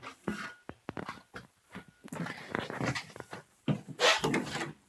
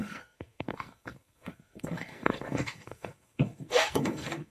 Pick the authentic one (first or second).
first